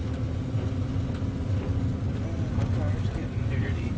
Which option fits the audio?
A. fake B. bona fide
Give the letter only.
B